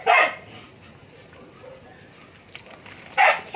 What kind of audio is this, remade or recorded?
recorded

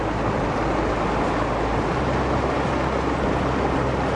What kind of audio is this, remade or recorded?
recorded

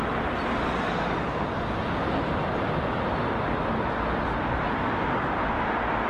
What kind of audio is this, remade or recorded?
recorded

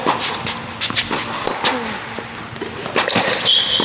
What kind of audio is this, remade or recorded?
recorded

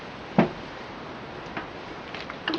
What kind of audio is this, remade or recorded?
recorded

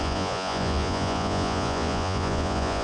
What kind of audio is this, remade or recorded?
remade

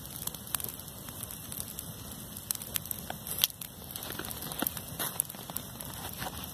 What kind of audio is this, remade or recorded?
recorded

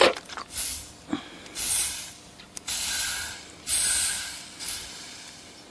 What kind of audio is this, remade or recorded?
remade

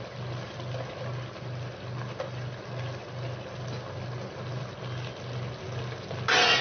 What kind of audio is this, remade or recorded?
recorded